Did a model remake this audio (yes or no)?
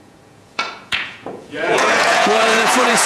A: yes